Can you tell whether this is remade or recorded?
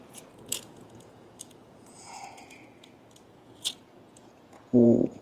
remade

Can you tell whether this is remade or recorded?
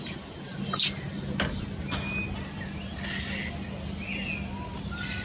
recorded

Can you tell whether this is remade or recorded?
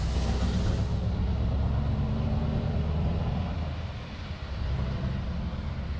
recorded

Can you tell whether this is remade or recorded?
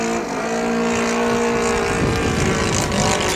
recorded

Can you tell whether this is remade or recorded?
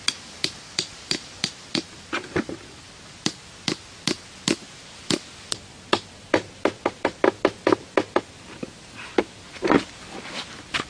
recorded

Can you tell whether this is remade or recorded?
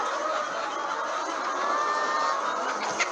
recorded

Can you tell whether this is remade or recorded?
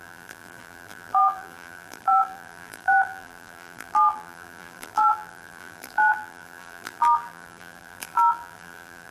remade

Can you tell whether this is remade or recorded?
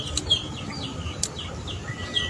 recorded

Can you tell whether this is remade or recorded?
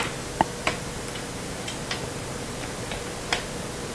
recorded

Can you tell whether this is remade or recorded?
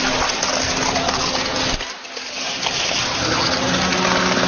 recorded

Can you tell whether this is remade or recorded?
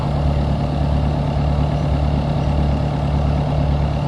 recorded